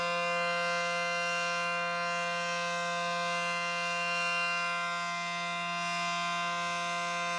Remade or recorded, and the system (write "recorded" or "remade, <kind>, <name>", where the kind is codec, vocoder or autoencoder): recorded